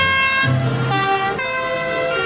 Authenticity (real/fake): real